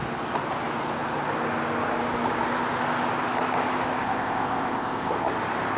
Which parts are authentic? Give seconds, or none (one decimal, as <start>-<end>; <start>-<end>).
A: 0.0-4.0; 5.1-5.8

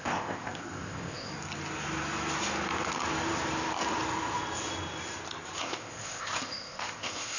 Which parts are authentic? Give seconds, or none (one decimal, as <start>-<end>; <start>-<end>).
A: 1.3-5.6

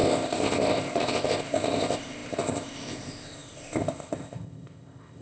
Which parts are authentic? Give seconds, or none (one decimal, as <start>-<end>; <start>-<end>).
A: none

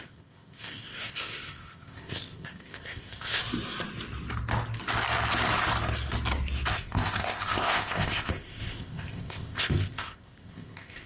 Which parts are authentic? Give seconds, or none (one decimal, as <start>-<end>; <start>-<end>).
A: 3.4-6.7

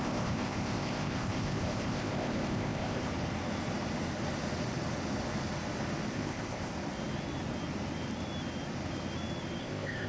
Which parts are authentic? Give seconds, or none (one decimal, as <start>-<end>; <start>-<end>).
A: 3.1-6.1; 6.7-9.6

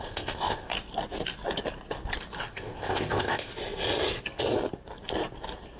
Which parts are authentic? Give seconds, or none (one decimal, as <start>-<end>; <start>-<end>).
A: 0.7-2.5; 3.5-5.8

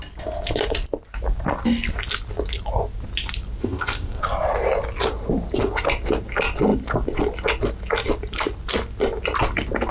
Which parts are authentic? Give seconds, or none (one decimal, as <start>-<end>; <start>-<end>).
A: 0.0-3.6; 4.2-9.9

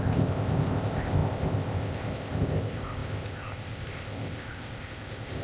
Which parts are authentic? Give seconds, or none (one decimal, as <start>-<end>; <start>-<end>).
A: none